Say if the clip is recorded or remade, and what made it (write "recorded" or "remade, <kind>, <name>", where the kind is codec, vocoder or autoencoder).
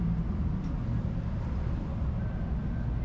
recorded